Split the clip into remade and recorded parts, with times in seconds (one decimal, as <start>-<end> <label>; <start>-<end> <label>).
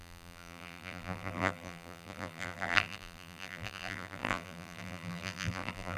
0.0-6.0 remade